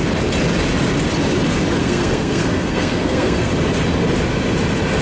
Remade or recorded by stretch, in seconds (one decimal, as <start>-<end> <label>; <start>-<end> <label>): 0.0-1.8 recorded; 1.8-3.5 remade; 3.5-5.0 recorded